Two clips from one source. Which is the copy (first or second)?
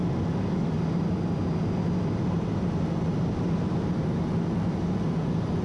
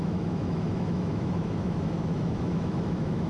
second